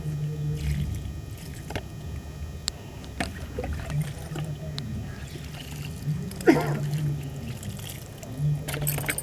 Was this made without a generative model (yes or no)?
yes